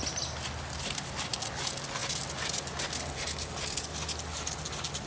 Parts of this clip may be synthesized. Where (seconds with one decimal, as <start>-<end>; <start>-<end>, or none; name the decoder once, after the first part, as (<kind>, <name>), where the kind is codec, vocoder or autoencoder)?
none

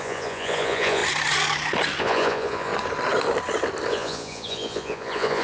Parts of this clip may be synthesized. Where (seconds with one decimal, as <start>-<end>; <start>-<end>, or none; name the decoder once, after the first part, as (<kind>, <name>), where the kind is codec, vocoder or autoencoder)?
0.0-1.0 (vocoder, Vocos); 2.0-2.7; 3.9-5.4

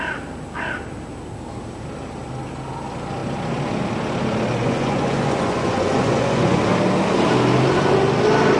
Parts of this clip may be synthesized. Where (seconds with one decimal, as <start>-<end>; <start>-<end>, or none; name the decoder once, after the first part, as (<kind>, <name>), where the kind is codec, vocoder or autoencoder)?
4.6-6.6 (vocoder, Vocos)

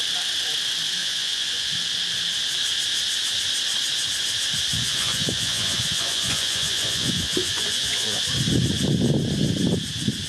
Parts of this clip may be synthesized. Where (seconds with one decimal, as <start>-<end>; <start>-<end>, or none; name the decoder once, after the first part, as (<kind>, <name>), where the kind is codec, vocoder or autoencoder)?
1.0-1.7 (vocoder, Vocos); 4.7-8.2

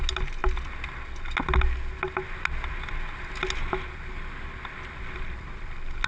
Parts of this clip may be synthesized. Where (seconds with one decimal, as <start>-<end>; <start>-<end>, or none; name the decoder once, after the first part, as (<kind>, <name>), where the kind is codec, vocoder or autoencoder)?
none

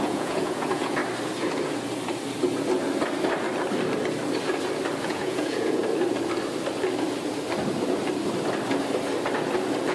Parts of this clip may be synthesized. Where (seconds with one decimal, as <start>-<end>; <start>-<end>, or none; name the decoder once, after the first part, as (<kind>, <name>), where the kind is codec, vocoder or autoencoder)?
0.0-1.0 (vocoder, Vocos); 5.0-5.8

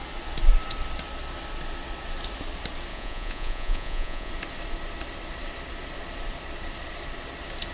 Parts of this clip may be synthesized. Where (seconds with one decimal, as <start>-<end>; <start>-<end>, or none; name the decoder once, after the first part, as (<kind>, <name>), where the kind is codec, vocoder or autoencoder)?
2.9-4.3 (vocoder, Vocos)